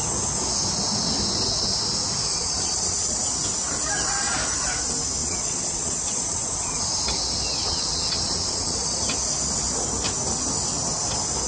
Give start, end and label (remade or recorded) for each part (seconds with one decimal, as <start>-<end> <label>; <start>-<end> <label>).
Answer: 0.0-2.3 recorded; 2.3-3.3 remade; 3.3-5.2 recorded; 5.2-6.8 remade; 6.8-7.6 recorded; 7.6-9.0 remade; 9.0-11.5 recorded